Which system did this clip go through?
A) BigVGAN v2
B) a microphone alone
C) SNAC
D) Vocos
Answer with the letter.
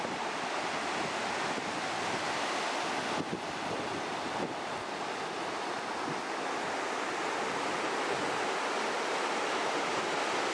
B